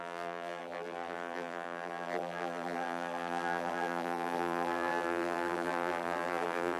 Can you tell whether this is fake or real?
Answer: fake